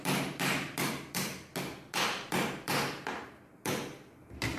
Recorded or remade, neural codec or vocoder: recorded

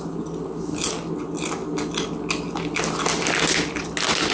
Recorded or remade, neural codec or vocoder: recorded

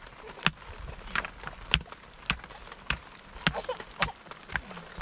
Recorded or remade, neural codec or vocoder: recorded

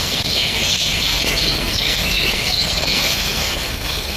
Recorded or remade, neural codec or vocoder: remade, codec, SNAC